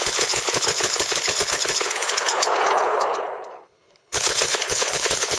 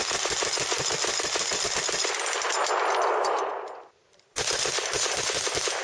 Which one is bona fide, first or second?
second